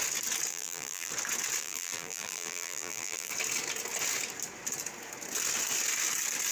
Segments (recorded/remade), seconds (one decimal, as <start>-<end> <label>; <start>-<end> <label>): 0.0-0.5 recorded; 0.5-1.1 remade; 1.1-1.6 recorded; 1.6-3.3 remade; 3.3-6.5 recorded